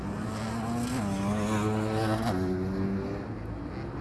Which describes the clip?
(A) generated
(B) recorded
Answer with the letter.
B